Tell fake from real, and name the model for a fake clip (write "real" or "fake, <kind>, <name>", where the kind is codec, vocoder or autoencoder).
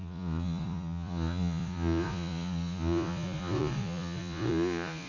fake, vocoder, Vocos